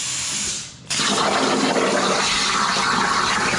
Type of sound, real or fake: real